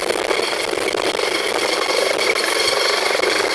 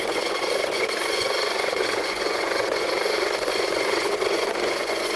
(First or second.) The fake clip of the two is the second